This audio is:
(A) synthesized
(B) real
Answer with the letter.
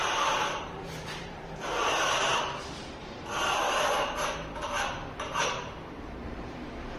A